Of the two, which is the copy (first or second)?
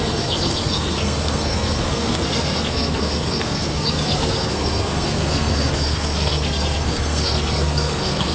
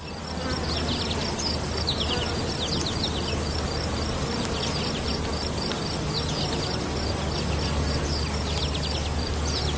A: first